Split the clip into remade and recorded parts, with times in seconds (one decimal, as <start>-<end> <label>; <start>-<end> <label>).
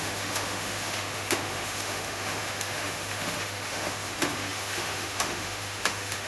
0.0-6.3 remade